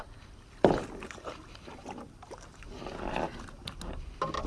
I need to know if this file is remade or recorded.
recorded